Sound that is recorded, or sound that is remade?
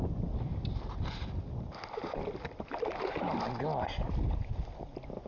recorded